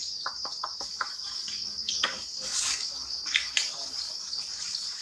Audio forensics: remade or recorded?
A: remade